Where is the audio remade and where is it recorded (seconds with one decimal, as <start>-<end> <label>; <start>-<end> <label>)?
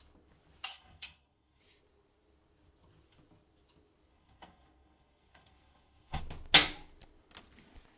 0.0-0.7 recorded; 0.7-1.6 remade; 1.6-4.1 recorded; 4.1-6.2 remade; 6.2-8.0 recorded